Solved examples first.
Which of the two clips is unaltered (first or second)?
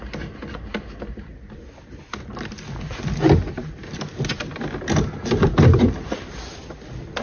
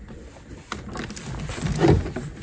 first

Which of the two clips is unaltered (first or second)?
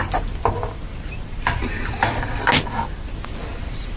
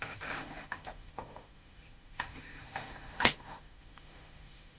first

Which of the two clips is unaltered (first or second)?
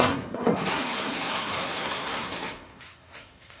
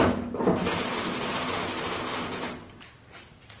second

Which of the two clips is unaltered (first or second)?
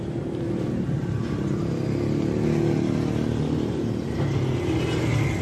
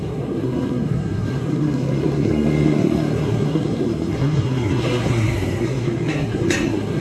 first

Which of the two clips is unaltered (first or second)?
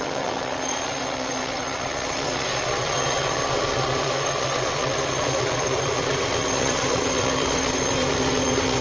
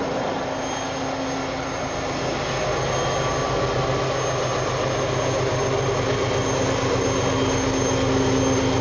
second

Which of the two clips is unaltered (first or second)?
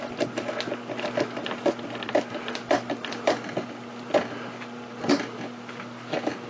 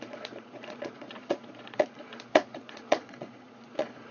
first